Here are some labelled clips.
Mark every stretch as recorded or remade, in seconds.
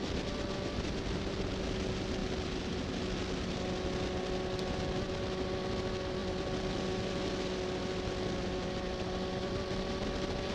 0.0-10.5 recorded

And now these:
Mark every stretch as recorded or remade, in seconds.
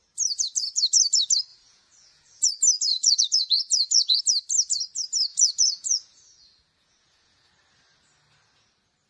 0.0-1.5 recorded; 1.5-2.5 remade; 2.5-2.9 recorded; 2.9-4.2 remade; 4.2-5.3 recorded; 5.3-7.5 remade; 7.5-9.1 recorded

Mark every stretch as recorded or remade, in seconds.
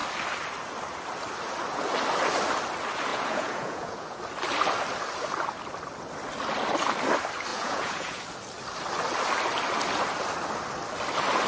0.0-3.1 recorded; 3.1-4.2 remade; 4.2-7.5 recorded; 7.5-8.2 remade; 8.2-11.5 recorded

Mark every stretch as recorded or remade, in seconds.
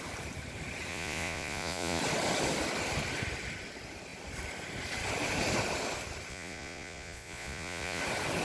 0.0-0.9 recorded; 0.9-2.0 remade; 2.0-6.3 recorded; 6.3-8.0 remade; 8.0-8.4 recorded